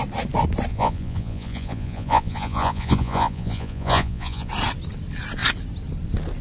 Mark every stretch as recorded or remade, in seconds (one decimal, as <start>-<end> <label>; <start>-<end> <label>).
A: 0.0-0.7 recorded; 0.7-4.5 remade; 4.5-6.4 recorded